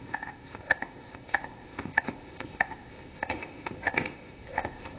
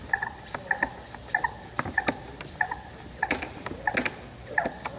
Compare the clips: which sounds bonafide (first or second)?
second